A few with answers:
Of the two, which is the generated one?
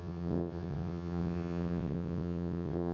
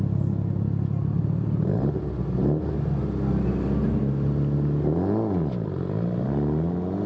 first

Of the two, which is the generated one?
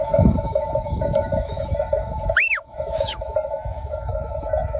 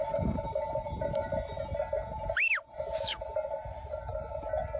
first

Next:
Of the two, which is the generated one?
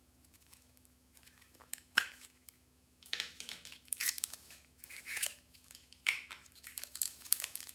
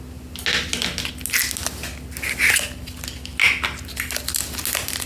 first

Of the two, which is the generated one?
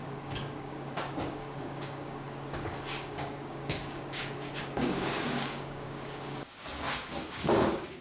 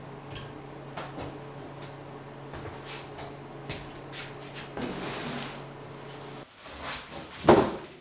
first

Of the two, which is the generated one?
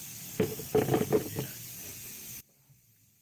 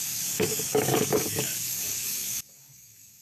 second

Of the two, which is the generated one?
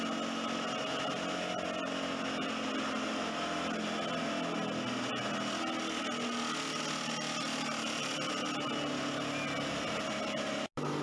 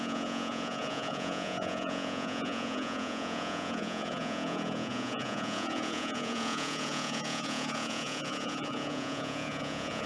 second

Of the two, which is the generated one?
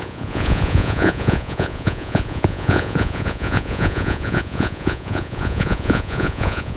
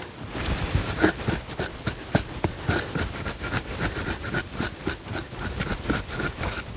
first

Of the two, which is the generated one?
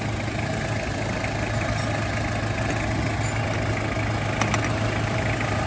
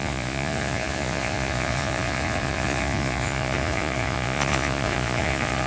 second